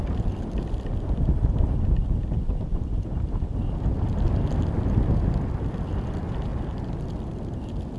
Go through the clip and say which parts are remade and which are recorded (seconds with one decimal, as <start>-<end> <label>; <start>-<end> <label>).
0.0-8.0 recorded